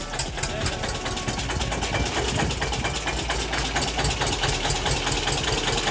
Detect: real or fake real